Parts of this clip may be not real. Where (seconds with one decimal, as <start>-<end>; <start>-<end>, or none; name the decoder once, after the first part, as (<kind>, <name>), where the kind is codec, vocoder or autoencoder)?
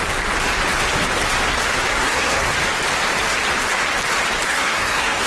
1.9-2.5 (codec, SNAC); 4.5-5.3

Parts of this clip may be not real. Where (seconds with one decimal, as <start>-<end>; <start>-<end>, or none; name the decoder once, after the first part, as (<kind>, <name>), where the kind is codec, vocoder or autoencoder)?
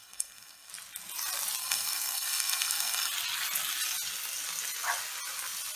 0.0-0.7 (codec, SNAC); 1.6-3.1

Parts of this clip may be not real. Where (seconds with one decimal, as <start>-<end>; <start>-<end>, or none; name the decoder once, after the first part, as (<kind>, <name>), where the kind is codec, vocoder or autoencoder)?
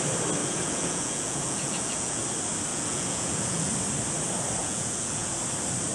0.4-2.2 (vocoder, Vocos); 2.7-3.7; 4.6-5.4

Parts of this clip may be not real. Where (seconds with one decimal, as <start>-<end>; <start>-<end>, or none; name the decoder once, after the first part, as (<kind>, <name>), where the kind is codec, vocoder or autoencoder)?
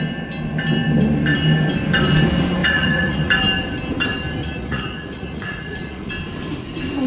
2.6-3.3 (vocoder, Vocos); 4.4-6.1